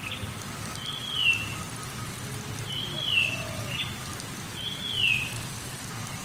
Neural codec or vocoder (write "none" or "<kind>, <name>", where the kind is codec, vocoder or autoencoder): none